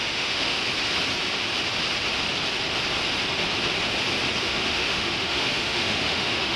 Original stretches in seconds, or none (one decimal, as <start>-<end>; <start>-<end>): 0.6-4.4

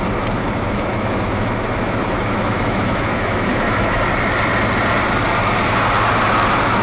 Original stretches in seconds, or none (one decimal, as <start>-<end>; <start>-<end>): 0.0-0.4; 4.0-6.8